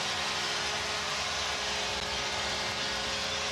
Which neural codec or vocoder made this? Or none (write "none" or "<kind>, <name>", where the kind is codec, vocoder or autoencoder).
none